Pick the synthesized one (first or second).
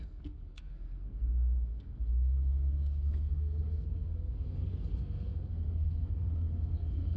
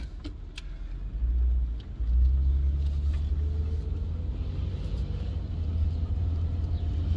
first